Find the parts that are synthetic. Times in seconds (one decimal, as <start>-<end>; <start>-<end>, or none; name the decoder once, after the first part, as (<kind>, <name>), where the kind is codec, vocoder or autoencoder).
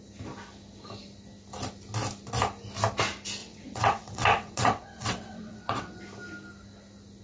3.4-6.0 (vocoder, WaveNeXt)